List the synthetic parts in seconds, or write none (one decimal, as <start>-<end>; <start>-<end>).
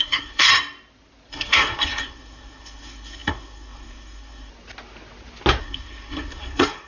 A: 0.0-0.5; 1.3-4.5; 5.6-6.9